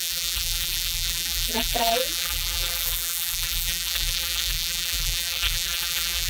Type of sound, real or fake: fake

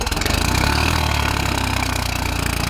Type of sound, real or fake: fake